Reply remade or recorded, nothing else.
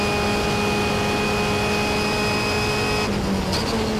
recorded